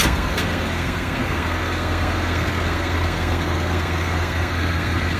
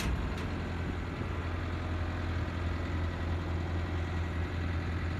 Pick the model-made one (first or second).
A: first